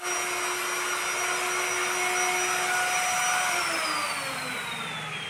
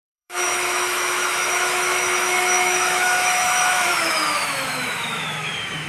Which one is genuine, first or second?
first